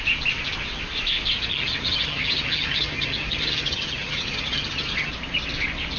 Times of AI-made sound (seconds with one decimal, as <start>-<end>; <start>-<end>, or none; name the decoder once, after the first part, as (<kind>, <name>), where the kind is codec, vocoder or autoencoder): 1.5-5.1 (vocoder, HiFi-GAN)